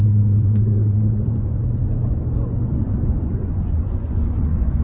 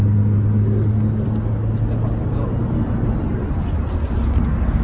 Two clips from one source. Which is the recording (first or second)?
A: second